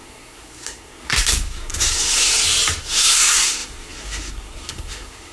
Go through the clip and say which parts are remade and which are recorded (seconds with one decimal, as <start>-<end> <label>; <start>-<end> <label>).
0.0-2.3 remade; 2.3-2.8 recorded; 2.8-5.3 remade